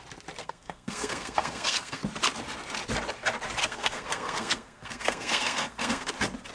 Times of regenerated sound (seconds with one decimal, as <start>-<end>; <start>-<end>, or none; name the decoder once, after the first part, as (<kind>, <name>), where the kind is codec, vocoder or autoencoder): 0.4-2.0 (codec, SNAC); 3.6-6.1

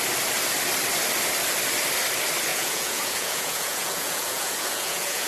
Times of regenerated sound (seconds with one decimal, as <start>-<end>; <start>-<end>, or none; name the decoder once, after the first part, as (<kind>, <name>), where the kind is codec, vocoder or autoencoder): 2.5-5.3 (vocoder, Vocos)

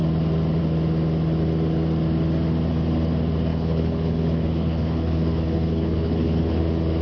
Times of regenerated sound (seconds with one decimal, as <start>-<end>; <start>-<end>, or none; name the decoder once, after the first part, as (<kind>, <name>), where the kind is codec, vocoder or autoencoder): 3.5-6.6 (codec, HILCodec)

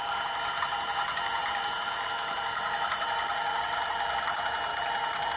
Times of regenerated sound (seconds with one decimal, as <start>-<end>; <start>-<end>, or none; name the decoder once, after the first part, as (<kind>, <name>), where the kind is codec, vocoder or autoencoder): none

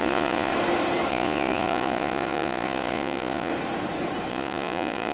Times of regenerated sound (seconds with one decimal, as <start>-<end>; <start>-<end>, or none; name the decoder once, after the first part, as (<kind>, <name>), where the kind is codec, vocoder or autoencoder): 0.0-0.5 (vocoder, Vocos); 1.1-3.5; 4.3-5.1

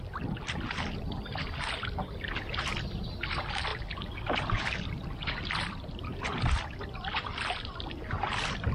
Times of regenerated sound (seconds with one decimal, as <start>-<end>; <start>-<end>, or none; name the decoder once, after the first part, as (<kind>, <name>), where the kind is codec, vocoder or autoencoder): none

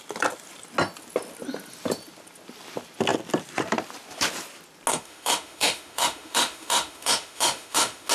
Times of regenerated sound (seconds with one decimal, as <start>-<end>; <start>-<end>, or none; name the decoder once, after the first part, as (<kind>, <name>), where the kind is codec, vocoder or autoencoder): 4.9-8.1 (autoencoder, DAC-VAE)